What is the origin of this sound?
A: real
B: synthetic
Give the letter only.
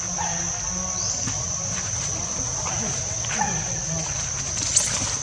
A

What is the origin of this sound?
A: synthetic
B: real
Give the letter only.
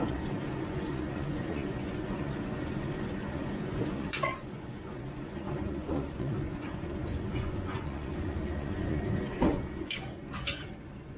A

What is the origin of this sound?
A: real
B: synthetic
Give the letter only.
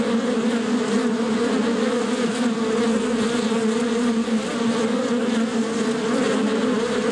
A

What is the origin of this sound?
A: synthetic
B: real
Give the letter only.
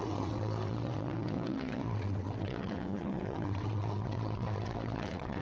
A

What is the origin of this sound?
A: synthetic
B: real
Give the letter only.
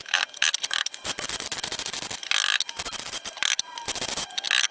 B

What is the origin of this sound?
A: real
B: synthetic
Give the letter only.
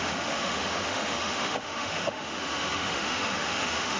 B